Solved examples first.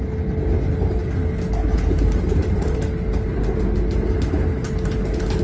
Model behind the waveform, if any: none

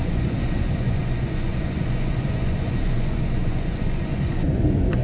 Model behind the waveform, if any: vocoder, Vocos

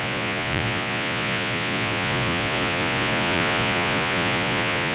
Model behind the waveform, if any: vocoder, Vocos